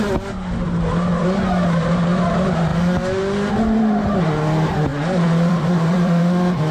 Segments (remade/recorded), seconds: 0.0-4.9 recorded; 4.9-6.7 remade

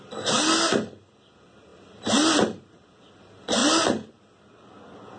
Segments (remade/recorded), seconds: 0.0-5.2 recorded

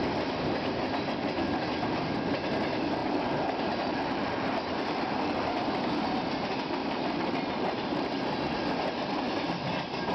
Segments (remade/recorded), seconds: 0.0-3.0 recorded; 3.0-5.6 remade; 5.6-6.8 recorded; 6.8-8.1 remade; 8.1-10.1 recorded

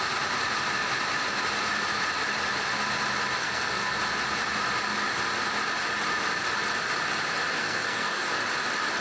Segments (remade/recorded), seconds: 0.0-3.4 recorded; 3.4-4.0 remade; 4.0-7.6 recorded; 7.6-8.2 remade; 8.2-9.0 recorded

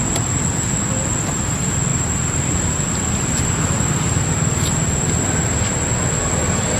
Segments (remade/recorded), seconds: 0.0-6.8 recorded

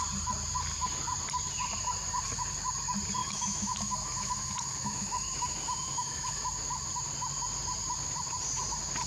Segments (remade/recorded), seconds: 0.0-3.2 recorded; 3.2-6.4 remade; 6.4-9.1 recorded